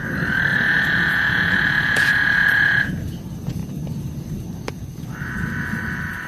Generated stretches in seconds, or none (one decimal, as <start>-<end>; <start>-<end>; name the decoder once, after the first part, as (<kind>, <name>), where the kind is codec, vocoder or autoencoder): 0.5-2.9 (vocoder, Vocos)